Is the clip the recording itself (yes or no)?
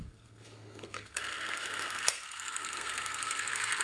no